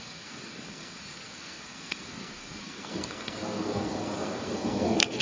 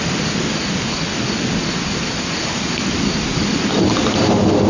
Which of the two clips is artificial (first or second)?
first